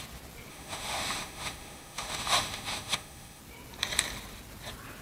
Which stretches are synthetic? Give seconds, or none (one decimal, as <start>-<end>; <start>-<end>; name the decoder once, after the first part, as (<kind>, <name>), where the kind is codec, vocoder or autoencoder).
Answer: 0.5-3.4 (autoencoder, DAC-VAE)